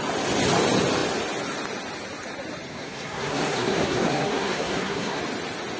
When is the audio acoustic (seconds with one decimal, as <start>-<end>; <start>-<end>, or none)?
0.0-2.7; 5.2-5.8